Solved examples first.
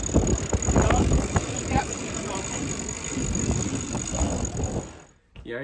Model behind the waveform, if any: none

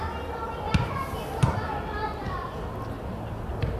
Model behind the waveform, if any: none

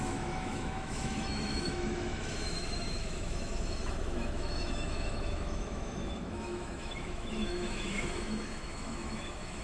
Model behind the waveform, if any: autoencoder, DAC-VAE